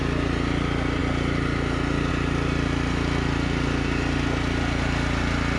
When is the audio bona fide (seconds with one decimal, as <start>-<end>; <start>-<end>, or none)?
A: 0.0-5.6